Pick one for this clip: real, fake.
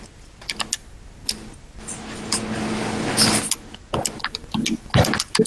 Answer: real